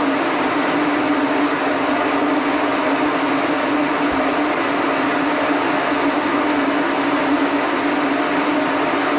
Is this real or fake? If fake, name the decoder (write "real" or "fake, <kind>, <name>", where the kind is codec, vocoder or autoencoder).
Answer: real